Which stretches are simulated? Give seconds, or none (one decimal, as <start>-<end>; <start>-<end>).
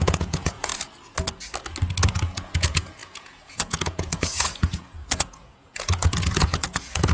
0.0-0.7; 2.0-7.1